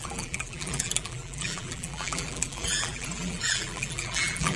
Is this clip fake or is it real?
fake